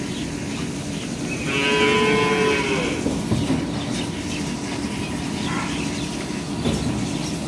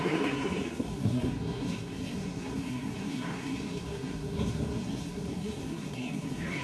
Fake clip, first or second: second